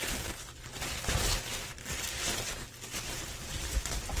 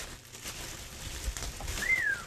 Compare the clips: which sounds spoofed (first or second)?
second